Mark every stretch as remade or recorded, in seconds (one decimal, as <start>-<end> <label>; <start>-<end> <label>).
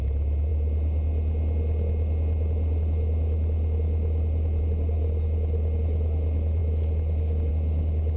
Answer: 0.0-8.2 recorded